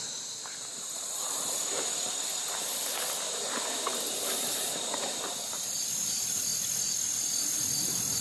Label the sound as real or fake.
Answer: real